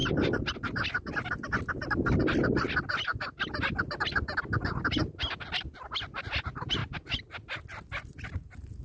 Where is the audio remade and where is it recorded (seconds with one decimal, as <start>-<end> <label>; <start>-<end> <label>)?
0.0-3.1 remade; 3.1-3.8 recorded; 3.8-6.8 remade; 6.8-8.0 recorded; 8.0-8.8 remade